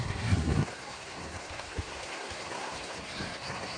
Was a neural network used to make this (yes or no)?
yes